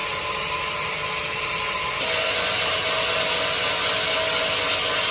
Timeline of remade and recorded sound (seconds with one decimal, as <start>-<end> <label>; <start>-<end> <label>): 0.0-5.1 recorded